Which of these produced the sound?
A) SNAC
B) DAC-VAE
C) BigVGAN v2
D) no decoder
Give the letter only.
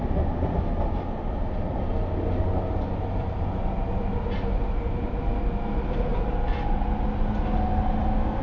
D